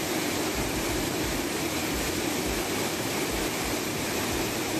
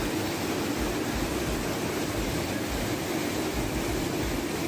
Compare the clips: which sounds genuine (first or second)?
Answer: second